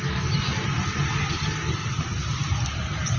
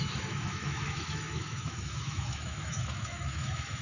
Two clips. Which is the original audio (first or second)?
first